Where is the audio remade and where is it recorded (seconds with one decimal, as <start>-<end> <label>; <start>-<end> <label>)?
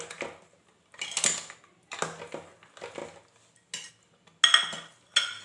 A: 0.0-5.4 recorded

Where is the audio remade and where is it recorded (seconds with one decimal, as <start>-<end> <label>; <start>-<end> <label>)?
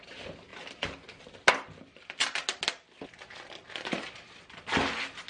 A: 0.0-5.3 recorded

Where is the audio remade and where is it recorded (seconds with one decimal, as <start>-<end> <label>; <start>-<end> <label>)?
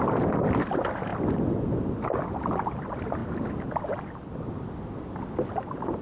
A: 0.0-6.0 recorded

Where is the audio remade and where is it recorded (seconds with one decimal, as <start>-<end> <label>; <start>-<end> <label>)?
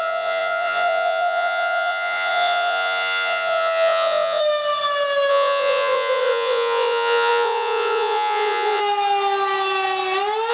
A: 0.0-4.4 remade; 4.4-5.3 recorded; 5.3-8.8 remade; 8.8-10.5 recorded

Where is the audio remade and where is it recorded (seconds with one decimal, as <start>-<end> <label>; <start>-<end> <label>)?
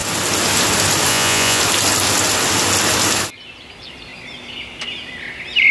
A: 0.0-1.1 recorded; 1.1-1.6 remade; 1.6-5.7 recorded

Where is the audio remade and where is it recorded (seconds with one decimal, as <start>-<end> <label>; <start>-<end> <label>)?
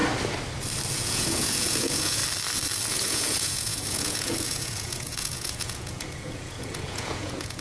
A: 0.0-0.9 recorded; 0.9-2.2 remade; 2.2-2.9 recorded; 2.9-7.6 remade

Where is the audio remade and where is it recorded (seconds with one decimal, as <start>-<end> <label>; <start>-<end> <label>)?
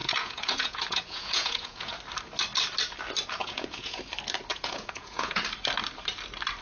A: 0.0-1.9 remade; 1.9-3.4 recorded; 3.4-4.0 remade; 4.0-4.5 recorded; 4.5-5.4 remade; 5.4-6.6 recorded